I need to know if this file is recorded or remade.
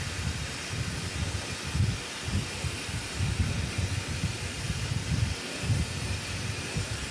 remade